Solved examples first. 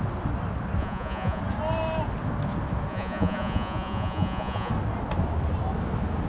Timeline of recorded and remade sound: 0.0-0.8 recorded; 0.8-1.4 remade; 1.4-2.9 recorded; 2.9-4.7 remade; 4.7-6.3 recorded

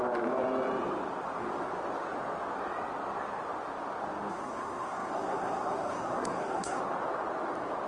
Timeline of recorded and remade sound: 0.0-4.3 recorded; 4.3-6.8 remade; 6.8-7.9 recorded

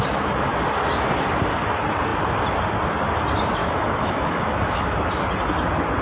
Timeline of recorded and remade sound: 0.0-3.6 recorded; 3.6-5.1 remade; 5.1-6.0 recorded

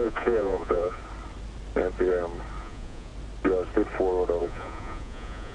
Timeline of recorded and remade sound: 0.0-1.0 remade; 1.0-2.6 recorded; 2.6-3.1 remade; 3.1-4.4 recorded; 4.4-5.5 remade

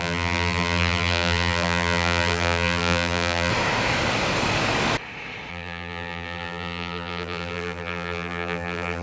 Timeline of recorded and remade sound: 0.0-3.5 remade; 3.5-5.5 recorded; 5.5-9.0 remade